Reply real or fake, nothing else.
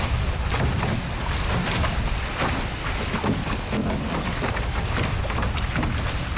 real